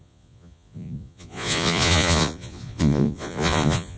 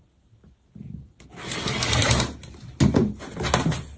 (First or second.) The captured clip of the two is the second